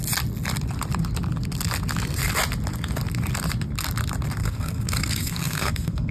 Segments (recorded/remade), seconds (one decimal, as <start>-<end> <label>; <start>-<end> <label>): 0.0-4.4 recorded; 4.4-6.1 remade